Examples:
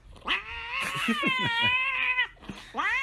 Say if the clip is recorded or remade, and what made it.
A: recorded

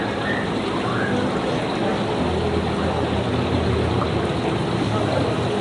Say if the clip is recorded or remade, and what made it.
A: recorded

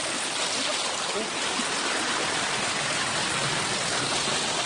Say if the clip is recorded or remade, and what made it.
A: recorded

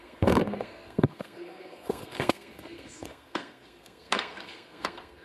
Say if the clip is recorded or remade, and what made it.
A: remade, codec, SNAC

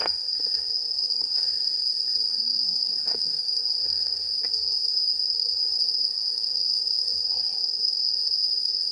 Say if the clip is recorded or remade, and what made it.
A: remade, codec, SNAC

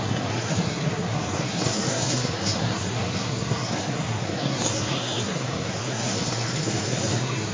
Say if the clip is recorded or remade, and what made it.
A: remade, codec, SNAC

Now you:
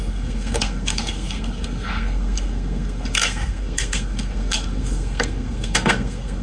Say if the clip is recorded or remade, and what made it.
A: remade, codec, SNAC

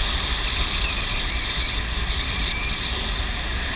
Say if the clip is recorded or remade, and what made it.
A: recorded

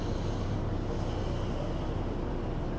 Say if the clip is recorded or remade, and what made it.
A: recorded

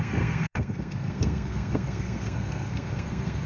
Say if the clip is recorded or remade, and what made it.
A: remade, codec, SNAC